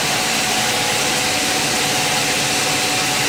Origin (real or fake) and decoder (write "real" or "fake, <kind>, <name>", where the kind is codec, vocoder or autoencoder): real